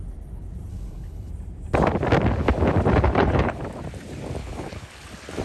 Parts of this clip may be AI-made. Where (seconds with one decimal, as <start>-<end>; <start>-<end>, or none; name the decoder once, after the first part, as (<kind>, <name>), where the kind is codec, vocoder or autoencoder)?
0.7-1.3 (codec, HILCodec); 2.9-3.6; 4.4-4.9